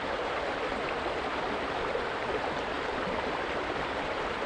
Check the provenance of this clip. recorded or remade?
remade